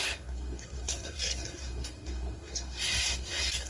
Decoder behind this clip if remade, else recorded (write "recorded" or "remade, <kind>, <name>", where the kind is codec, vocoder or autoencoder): remade, codec, SNAC